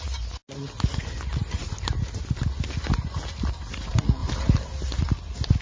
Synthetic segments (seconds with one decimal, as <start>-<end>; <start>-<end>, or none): none

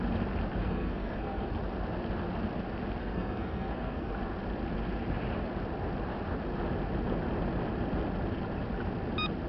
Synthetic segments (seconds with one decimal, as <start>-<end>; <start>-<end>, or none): 0.6-1.5; 3.0-4.1

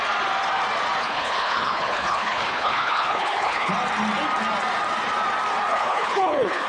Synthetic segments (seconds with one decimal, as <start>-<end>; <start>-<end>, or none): 1.0-3.7; 5.7-6.7

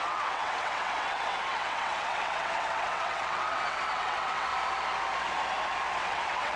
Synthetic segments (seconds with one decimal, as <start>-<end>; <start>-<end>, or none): 0.0-4.5; 6.0-6.6

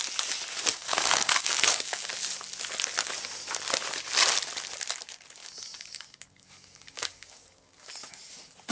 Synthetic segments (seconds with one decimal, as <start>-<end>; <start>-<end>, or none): 0.7-2.1; 5.4-7.9

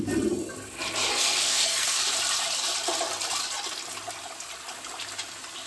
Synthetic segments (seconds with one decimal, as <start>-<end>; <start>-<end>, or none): 1.1-2.0

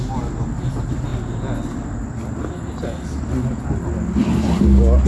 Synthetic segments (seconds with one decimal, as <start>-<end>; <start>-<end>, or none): none

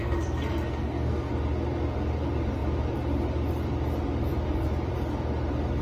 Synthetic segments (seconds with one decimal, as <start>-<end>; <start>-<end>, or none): 0.0-1.3